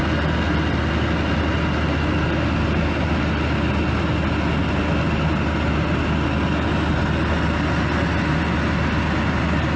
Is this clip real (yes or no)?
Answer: yes